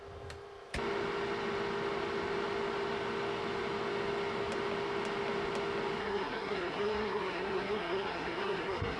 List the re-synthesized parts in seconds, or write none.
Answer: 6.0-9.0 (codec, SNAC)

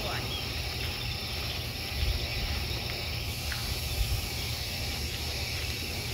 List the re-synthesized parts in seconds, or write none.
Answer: none